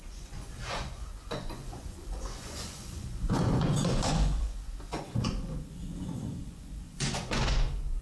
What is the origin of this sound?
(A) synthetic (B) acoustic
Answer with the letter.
A